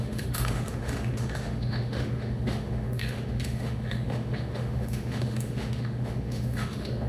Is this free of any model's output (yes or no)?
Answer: no